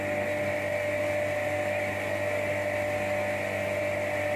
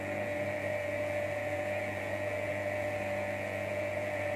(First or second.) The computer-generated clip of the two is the second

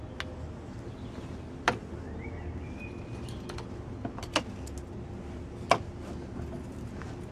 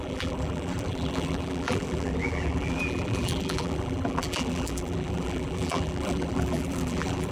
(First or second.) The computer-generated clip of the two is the second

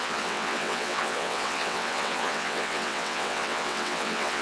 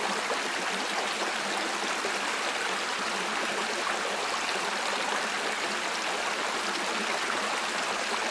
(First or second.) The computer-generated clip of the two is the first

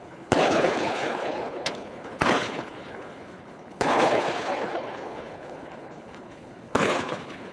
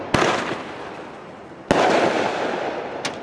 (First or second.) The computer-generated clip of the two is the first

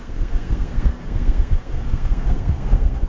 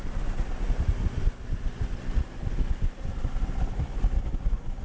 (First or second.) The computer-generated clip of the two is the first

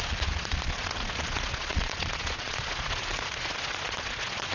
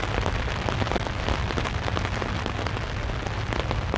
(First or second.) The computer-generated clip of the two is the first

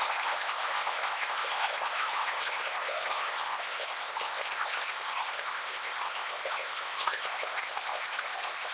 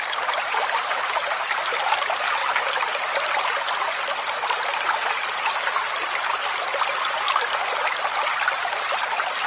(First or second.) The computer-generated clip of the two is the first